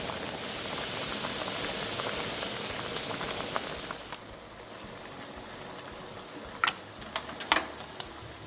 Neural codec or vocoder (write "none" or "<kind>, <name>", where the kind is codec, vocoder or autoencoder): none